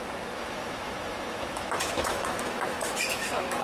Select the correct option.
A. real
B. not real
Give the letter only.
B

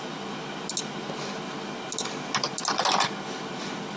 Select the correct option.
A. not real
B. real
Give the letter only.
B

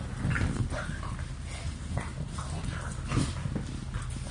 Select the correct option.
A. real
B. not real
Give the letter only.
A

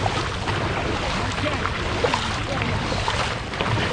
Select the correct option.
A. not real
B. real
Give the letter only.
B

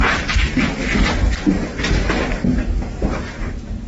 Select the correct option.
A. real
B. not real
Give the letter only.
A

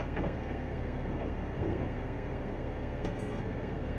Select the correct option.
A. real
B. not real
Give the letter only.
B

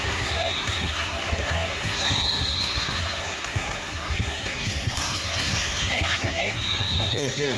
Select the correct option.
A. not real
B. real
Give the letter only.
A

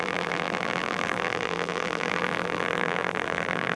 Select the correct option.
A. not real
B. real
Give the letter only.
A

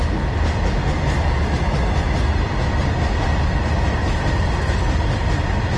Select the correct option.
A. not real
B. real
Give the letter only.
B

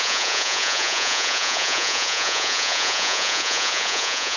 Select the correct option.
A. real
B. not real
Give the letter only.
B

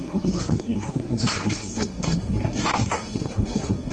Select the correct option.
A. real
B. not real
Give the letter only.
B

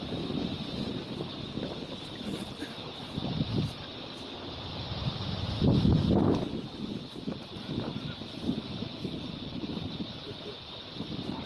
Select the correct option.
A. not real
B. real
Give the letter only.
B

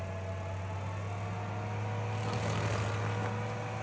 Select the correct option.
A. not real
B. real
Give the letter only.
B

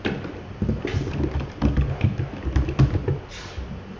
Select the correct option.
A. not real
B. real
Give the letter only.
B